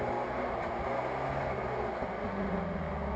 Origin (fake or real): real